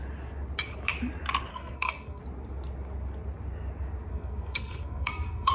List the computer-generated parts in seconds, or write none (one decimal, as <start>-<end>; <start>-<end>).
1.5-2.2; 4.1-5.5